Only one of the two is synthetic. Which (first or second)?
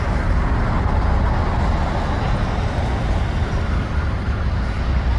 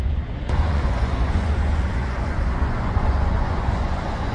second